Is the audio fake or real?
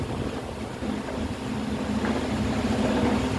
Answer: real